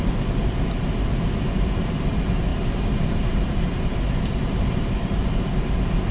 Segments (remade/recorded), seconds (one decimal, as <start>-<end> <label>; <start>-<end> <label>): 0.0-2.5 recorded; 2.5-5.3 remade; 5.3-6.1 recorded